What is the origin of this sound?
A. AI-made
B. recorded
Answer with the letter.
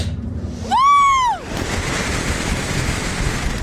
B